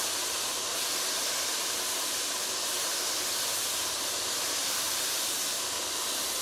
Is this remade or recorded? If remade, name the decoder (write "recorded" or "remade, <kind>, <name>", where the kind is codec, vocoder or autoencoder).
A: recorded